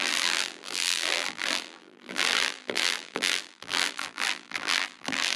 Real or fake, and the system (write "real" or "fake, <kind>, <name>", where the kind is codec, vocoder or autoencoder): fake, vocoder, BigVGAN v2